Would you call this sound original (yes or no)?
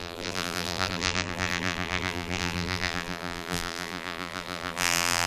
no